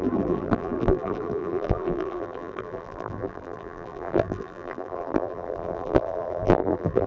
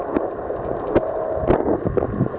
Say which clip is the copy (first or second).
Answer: first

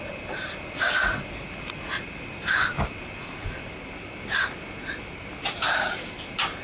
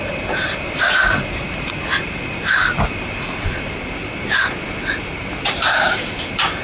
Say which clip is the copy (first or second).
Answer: second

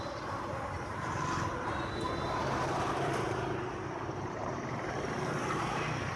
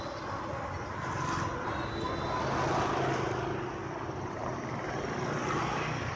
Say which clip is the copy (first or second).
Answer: first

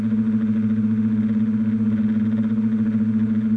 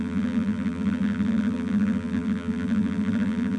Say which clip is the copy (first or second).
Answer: second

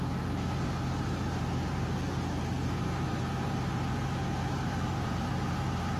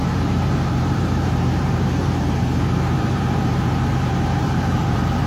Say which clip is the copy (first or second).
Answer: second